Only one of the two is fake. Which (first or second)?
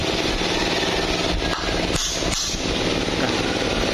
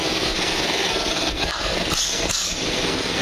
second